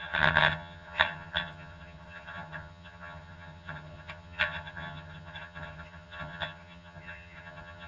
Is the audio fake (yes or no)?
yes